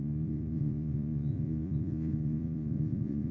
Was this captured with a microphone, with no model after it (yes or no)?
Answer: no